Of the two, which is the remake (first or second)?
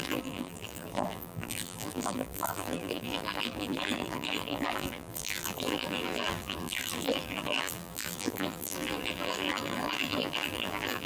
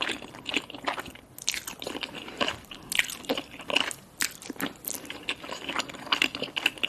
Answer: first